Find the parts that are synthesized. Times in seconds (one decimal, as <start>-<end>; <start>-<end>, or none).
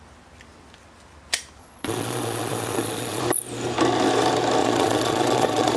1.6-3.2; 4.6-5.8